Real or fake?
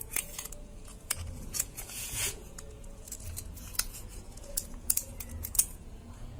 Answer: fake